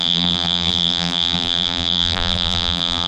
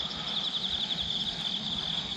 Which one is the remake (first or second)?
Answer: first